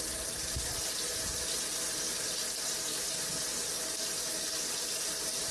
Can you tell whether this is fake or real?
real